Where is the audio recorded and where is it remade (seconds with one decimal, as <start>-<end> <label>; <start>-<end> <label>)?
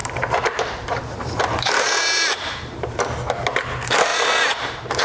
0.0-3.0 remade; 3.0-4.1 recorded; 4.1-5.0 remade